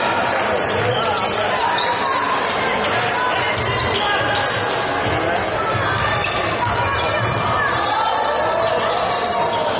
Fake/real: real